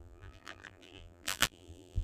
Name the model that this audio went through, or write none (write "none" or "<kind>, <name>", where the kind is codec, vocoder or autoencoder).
vocoder, BigVGAN v2